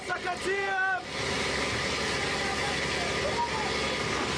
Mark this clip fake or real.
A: real